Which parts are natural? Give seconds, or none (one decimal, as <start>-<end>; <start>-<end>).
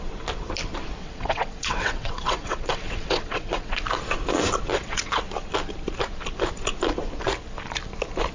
0.0-1.0; 3.8-4.7; 5.2-8.3